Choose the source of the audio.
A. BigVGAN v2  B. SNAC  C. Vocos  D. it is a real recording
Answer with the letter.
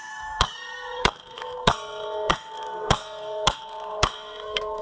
B